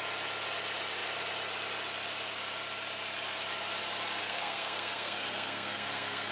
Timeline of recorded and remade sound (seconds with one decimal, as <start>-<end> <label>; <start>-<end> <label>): 0.0-4.2 recorded; 4.2-6.3 remade